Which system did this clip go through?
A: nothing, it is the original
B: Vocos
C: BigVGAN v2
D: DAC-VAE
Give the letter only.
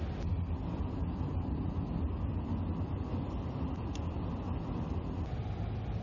A